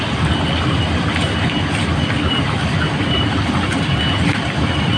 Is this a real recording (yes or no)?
yes